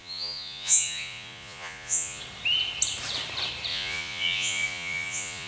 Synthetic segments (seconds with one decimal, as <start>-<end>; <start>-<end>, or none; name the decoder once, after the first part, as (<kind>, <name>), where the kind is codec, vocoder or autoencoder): 0.0-2.2 (vocoder, Vocos); 3.7-5.5